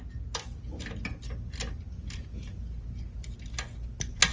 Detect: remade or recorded recorded